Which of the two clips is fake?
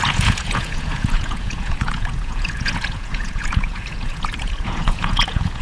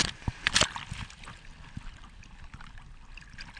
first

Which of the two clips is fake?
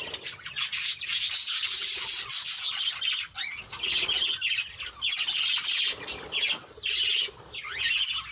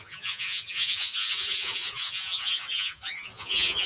second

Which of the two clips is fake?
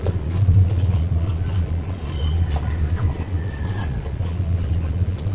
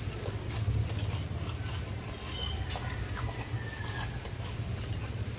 first